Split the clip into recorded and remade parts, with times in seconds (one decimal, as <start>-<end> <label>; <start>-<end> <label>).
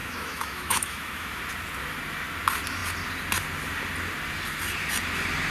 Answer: 0.0-1.4 remade; 1.4-5.5 recorded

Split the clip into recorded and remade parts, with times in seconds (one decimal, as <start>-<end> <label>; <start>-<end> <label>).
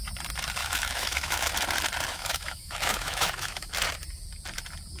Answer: 0.0-0.6 recorded; 0.6-1.5 remade; 1.5-2.1 recorded; 2.1-3.7 remade; 3.7-5.0 recorded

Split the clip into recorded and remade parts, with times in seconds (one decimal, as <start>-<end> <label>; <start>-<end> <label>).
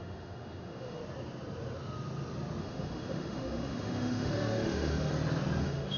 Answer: 0.0-1.0 remade; 1.0-2.6 recorded; 2.6-5.1 remade; 5.1-5.6 recorded; 5.6-6.0 remade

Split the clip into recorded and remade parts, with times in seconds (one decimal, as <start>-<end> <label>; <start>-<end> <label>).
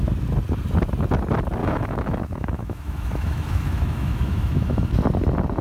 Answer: 0.0-1.6 recorded; 1.6-5.0 remade; 5.0-5.6 recorded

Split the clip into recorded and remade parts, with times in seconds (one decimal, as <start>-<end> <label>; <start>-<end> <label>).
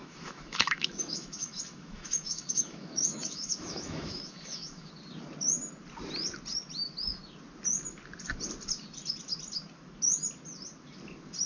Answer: 0.0-4.9 remade; 4.9-11.5 recorded